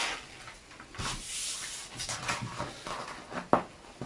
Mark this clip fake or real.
real